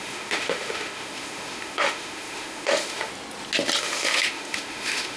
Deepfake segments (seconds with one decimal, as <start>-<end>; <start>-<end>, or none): 0.0-3.1; 3.8-5.2